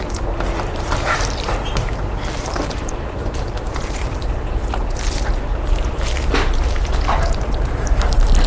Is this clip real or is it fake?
fake